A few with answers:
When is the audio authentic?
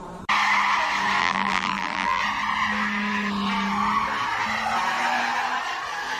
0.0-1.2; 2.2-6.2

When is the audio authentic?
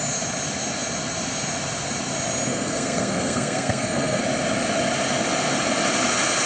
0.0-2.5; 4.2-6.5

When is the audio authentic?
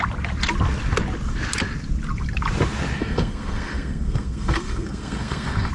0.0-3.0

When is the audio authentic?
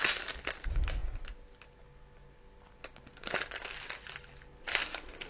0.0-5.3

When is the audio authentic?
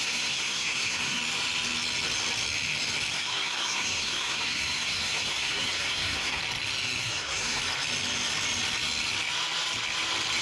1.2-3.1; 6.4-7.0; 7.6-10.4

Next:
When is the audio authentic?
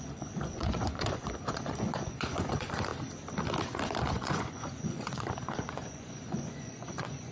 2.9-4.1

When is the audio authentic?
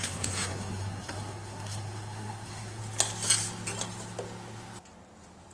2.8-5.5